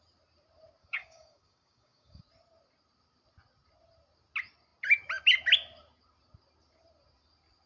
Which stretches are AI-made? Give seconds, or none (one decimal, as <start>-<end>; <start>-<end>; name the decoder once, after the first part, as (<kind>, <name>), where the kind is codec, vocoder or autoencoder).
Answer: 0.8-2.2 (codec, DAC)